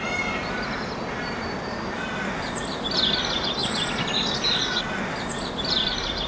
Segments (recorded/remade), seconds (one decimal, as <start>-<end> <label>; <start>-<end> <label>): 0.0-6.3 recorded